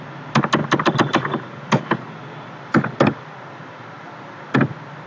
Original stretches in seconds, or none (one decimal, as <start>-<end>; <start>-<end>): 0.0-5.1